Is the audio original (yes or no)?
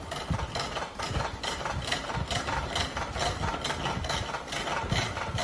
yes